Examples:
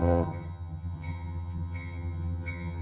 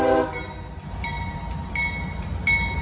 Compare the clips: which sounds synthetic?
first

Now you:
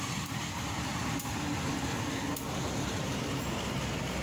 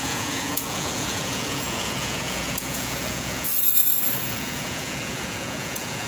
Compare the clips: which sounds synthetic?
second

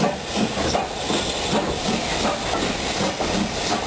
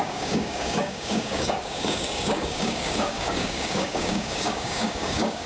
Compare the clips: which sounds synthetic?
second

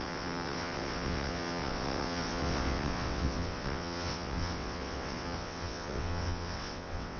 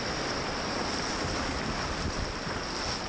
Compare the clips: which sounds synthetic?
first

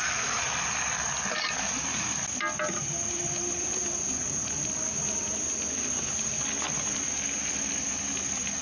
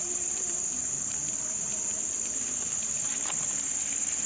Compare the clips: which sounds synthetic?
second